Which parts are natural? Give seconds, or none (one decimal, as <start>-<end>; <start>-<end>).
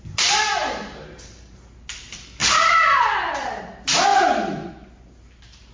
0.0-0.6; 1.6-2.4; 3.6-5.7